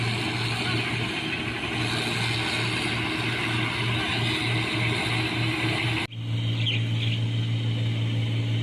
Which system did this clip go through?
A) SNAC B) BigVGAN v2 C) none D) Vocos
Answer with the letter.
C